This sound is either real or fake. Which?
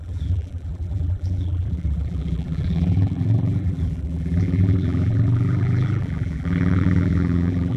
fake